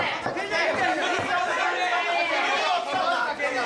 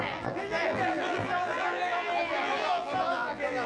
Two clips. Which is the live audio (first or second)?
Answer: first